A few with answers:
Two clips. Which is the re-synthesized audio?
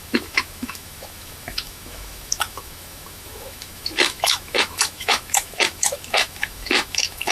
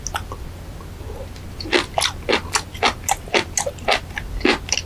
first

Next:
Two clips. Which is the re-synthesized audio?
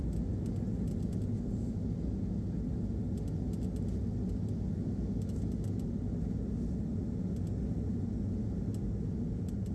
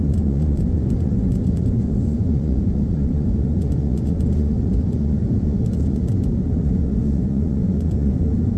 second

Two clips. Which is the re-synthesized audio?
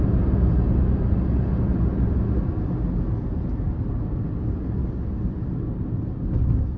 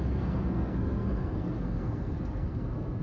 second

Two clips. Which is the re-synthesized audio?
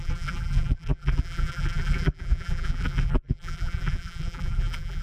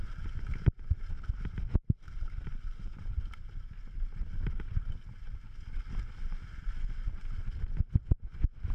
first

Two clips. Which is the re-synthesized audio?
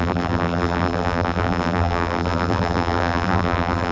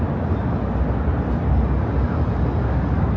first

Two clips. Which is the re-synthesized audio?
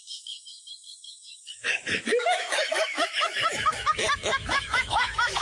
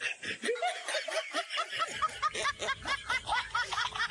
first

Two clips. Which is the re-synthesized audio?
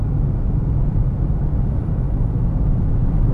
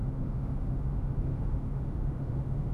second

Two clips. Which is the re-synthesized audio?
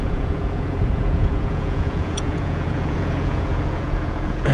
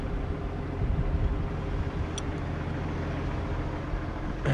first